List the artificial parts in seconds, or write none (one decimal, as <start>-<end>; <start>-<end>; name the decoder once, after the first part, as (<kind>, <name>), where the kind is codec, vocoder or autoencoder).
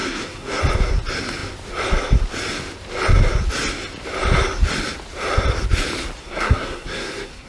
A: 0.0-0.6 (codec, SNAC); 6.2-7.5